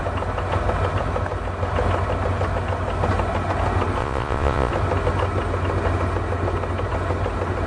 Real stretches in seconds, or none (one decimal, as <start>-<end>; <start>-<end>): 0.0-4.0; 4.7-7.7

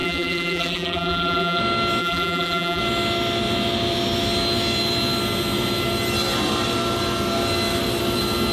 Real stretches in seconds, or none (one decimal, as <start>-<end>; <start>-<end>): 1.6-2.0; 2.8-8.5

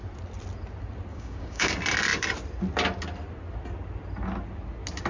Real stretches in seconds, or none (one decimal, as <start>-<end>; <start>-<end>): 0.0-1.1; 1.7-5.1

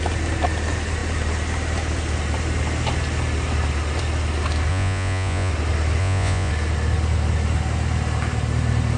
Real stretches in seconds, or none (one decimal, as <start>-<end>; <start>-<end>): 0.0-4.7; 5.5-6.0; 6.5-9.0

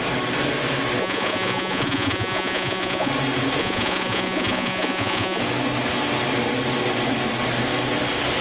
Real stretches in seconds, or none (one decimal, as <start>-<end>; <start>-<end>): 0.0-1.0; 3.1-3.6; 5.4-8.4

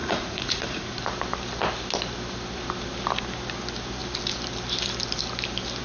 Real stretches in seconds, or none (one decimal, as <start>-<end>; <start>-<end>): 1.0-5.8

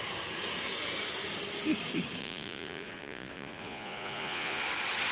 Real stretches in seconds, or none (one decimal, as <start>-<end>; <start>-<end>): 0.0-2.2; 4.6-5.1

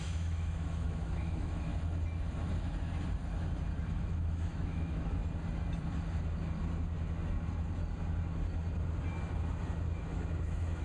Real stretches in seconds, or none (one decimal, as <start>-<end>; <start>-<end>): 1.7-3.9; 5.2-10.0